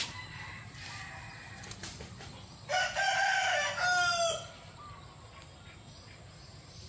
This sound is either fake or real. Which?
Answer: real